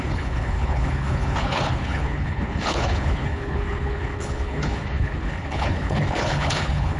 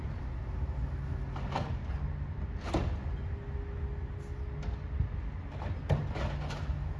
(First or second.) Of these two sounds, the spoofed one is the first